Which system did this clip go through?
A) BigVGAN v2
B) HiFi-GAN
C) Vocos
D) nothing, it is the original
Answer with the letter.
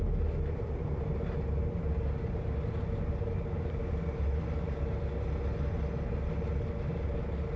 D